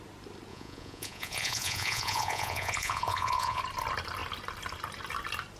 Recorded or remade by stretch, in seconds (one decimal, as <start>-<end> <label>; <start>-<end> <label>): 0.0-0.5 recorded; 0.5-3.6 remade; 3.6-5.6 recorded